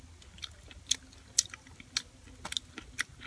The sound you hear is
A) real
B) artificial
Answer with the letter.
A